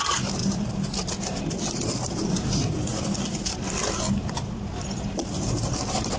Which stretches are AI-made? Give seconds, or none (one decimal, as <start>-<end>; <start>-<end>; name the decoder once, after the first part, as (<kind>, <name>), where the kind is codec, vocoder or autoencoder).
0.0-0.4 (vocoder, BigVGAN v2); 1.4-4.2